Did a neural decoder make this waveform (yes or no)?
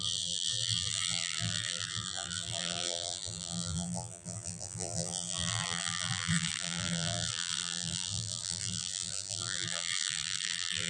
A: yes